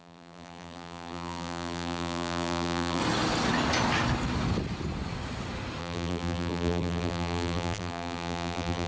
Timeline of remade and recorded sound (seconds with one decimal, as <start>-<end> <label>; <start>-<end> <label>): 0.0-3.0 remade; 3.0-5.8 recorded; 5.8-8.9 remade